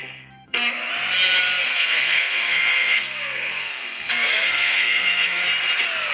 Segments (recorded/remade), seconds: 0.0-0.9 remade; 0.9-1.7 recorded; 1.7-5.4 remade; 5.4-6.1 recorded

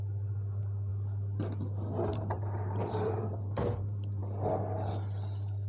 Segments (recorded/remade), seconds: 0.0-2.1 recorded; 2.1-4.2 remade; 4.2-5.7 recorded

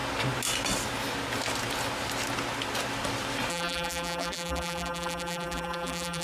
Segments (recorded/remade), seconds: 0.0-3.5 recorded; 3.5-6.2 remade